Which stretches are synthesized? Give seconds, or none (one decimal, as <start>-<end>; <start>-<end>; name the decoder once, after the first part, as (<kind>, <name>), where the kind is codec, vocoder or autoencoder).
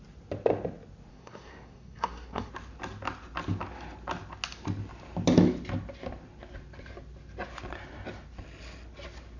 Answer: 1.1-2.5 (codec, SNAC)